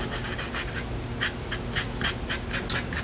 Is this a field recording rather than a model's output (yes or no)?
yes